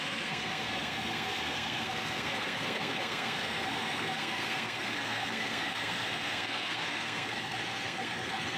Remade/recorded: remade